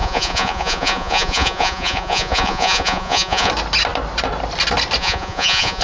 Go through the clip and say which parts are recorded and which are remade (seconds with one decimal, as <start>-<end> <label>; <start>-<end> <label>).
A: 0.0-3.5 remade; 3.5-5.0 recorded; 5.0-5.8 remade